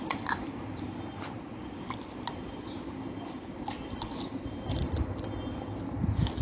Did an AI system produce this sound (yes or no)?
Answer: no